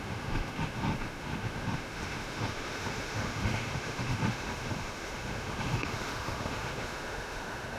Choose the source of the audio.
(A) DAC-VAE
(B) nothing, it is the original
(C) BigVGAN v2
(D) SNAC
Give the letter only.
A